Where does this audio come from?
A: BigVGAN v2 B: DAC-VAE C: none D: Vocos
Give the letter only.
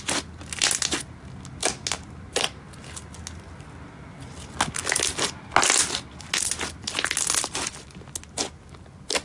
C